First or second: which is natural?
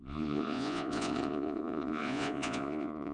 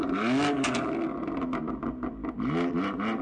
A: second